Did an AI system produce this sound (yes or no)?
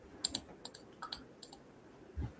no